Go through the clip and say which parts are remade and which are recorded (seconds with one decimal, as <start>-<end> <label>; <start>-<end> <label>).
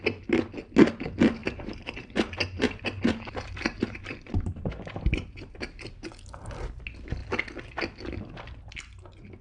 0.0-1.4 recorded; 1.4-5.6 remade; 5.6-9.4 recorded